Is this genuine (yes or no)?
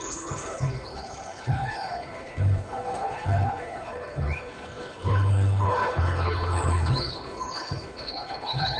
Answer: no